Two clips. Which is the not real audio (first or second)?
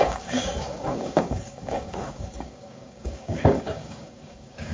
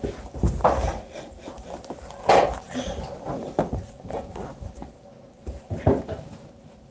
first